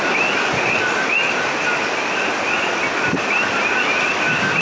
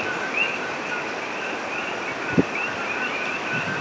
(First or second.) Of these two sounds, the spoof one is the second